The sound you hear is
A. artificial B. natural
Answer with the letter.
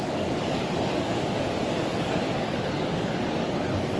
A